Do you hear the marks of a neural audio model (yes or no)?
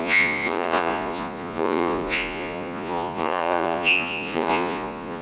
yes